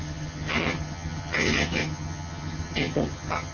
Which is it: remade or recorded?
remade